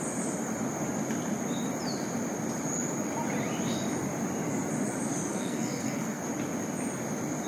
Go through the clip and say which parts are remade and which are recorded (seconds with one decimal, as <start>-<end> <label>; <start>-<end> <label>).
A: 0.0-5.3 recorded; 5.3-6.2 remade; 6.2-7.5 recorded